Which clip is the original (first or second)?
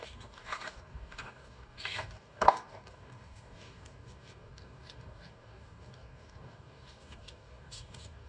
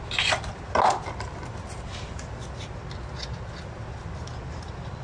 second